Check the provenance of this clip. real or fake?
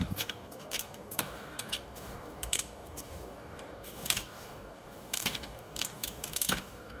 fake